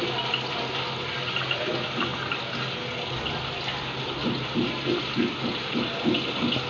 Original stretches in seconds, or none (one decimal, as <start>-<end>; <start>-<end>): 0.0-6.7